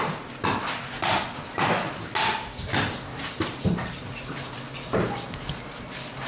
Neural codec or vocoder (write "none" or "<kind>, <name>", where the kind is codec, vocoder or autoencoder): none